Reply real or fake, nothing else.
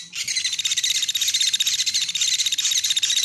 real